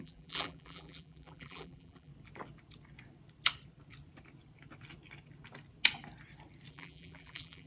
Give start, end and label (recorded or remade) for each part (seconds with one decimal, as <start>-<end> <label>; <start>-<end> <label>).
0.0-2.1 remade; 2.1-6.7 recorded; 6.7-7.7 remade